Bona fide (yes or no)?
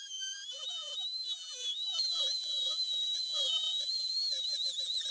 no